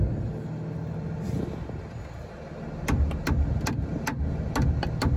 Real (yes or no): yes